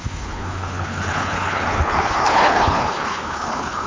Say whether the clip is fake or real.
fake